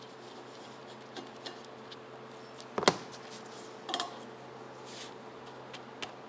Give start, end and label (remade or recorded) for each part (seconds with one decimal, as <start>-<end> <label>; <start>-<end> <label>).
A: 0.0-6.3 recorded